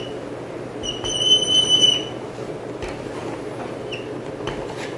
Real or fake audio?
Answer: real